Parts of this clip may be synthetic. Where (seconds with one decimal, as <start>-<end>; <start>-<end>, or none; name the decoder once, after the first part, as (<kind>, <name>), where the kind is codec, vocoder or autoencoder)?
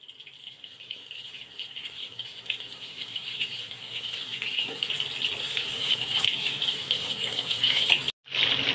0.4-4.9 (codec, SNAC); 5.4-7.9